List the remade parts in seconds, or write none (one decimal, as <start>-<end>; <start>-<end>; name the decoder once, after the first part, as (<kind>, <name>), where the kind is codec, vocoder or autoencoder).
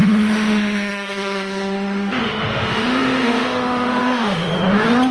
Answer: 0.0-4.5 (autoencoder, DAC-VAE)